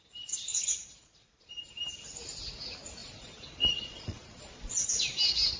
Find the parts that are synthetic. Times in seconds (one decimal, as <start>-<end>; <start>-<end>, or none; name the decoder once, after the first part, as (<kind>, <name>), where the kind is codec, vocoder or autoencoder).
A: 0.5-1.5 (vocoder, Vocos); 3.0-4.9

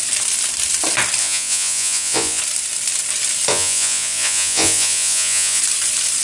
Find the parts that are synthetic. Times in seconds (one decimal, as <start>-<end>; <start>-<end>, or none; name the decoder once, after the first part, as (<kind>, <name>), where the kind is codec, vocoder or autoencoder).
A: 1.2-2.4 (vocoder, Vocos); 3.5-5.6